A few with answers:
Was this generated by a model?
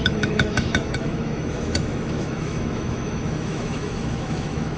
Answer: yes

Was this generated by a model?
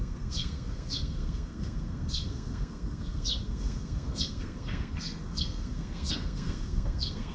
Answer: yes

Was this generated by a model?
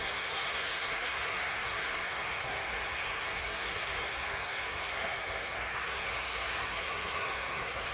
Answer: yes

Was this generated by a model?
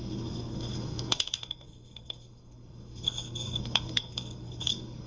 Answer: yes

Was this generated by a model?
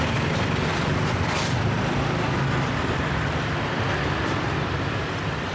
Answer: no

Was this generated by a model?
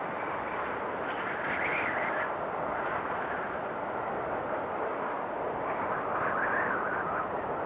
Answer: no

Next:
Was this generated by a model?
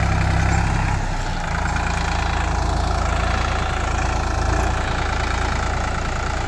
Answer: no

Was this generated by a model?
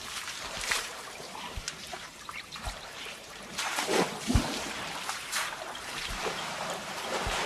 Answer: yes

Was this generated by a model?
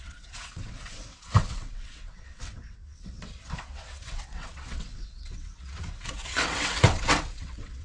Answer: yes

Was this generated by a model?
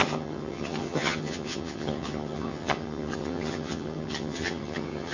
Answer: yes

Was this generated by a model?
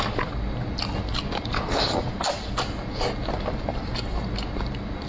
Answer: no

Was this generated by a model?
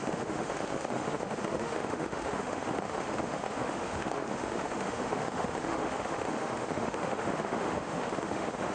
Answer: yes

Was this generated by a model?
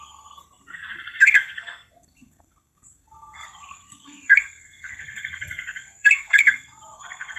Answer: yes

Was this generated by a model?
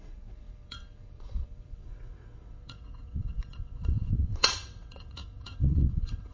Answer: yes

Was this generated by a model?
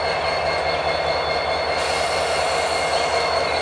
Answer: no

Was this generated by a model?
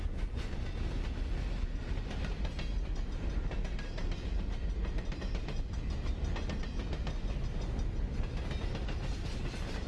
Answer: no